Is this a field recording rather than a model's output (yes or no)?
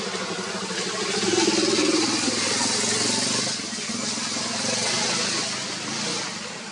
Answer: yes